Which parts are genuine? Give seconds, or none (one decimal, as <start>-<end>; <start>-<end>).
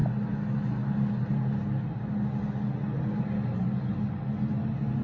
0.0-5.0